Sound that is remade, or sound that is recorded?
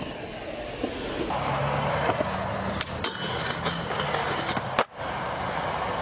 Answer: recorded